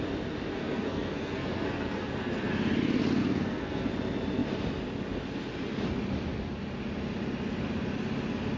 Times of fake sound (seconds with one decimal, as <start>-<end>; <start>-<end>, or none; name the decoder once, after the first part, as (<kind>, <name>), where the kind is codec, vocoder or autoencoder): 0.5-2.5 (codec, SNAC); 3.2-3.9